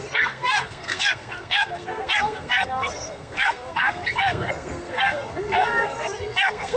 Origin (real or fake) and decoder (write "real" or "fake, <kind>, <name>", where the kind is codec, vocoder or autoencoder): fake, codec, SNAC